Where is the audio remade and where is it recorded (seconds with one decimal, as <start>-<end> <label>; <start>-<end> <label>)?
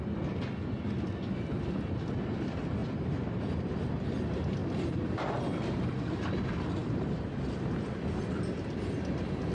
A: 0.0-2.8 recorded; 2.8-3.4 remade; 3.4-6.8 recorded; 6.8-7.9 remade; 7.9-9.5 recorded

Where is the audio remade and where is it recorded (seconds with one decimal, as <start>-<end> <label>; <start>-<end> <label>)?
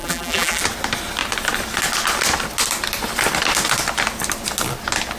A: 0.0-0.6 remade; 0.6-5.2 recorded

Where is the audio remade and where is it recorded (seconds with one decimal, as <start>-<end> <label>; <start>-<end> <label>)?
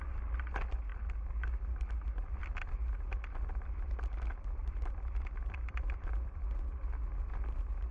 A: 0.0-4.6 recorded; 4.6-6.6 remade; 6.6-7.9 recorded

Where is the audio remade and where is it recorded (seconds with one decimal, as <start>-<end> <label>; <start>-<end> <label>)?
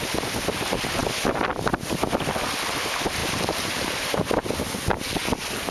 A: 0.0-3.2 recorded; 3.2-4.3 remade; 4.3-5.7 recorded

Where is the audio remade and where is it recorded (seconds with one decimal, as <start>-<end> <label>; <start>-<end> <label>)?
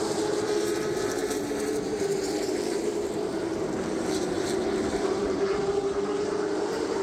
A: 0.0-7.0 remade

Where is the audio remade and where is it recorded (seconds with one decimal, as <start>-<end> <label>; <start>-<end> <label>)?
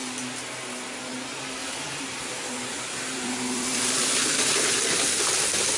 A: 0.0-1.6 recorded; 1.6-5.1 remade; 5.1-5.8 recorded